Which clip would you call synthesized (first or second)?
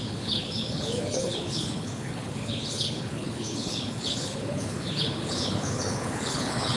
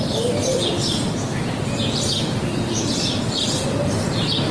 first